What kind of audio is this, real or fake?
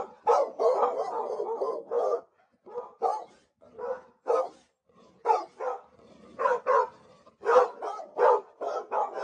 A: real